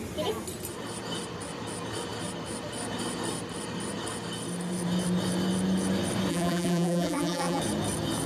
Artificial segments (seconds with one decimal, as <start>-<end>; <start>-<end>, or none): 6.3-7.6